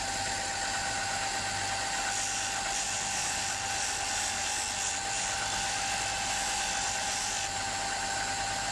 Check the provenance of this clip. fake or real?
real